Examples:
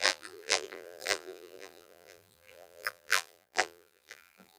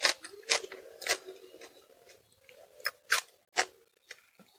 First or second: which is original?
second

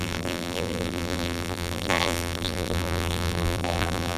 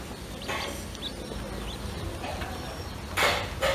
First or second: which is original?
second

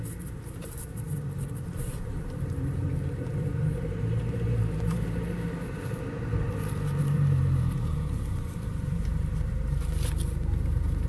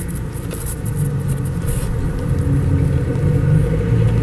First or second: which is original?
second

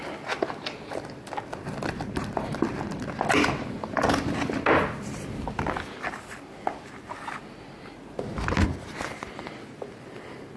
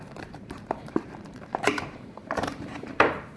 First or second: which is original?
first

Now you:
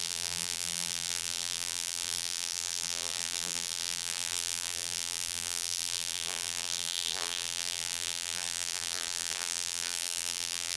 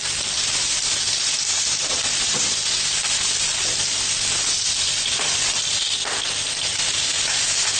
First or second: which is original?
second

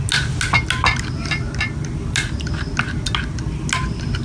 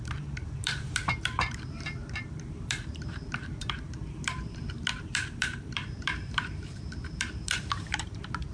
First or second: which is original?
first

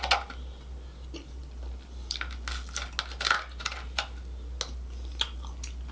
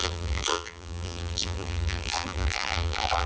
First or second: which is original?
first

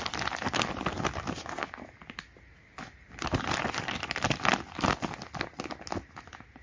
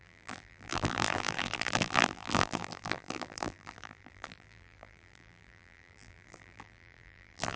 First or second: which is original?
first